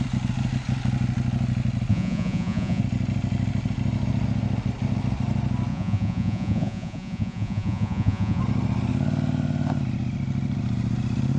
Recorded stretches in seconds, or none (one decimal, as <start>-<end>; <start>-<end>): 0.0-1.9; 2.8-5.7; 8.4-11.4